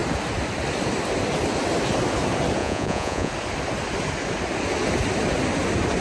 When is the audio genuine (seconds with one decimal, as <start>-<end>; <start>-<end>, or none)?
0.0-2.6; 3.3-6.0